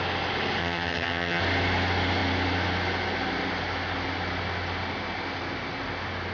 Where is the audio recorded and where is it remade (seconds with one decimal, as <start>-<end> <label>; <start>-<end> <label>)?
0.0-0.6 recorded; 0.6-1.4 remade; 1.4-6.3 recorded